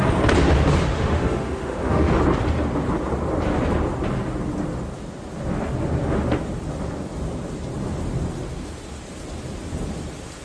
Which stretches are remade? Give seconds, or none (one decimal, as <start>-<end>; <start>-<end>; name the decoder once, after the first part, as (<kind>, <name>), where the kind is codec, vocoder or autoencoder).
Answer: 0.9-2.2 (autoencoder, DAC-VAE)